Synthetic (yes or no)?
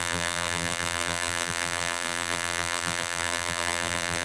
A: yes